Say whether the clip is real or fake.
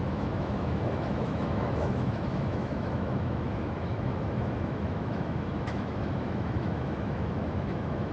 fake